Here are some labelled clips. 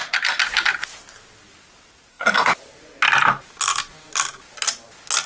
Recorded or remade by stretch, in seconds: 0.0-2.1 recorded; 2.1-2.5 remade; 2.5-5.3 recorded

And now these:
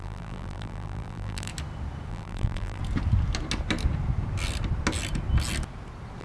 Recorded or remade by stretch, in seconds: 0.0-1.5 remade; 1.5-2.1 recorded; 2.1-2.8 remade; 2.8-6.2 recorded